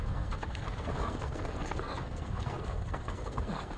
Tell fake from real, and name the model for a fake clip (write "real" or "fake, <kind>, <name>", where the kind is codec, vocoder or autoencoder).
fake, codec, SNAC